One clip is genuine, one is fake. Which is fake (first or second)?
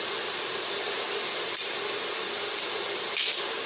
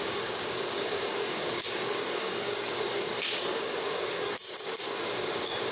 second